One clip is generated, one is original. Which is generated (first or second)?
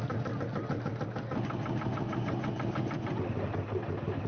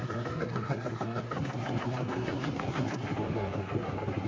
second